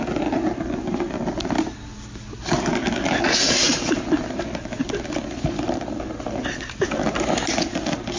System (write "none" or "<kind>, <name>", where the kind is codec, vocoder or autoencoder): none